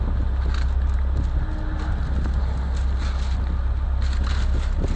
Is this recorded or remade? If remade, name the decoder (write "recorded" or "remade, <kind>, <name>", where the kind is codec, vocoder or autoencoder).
recorded